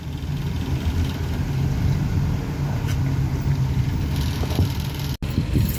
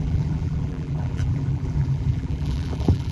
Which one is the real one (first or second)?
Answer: first